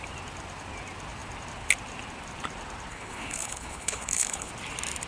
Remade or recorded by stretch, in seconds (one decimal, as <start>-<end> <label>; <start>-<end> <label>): 0.0-2.9 recorded; 2.9-4.5 remade; 4.5-5.1 recorded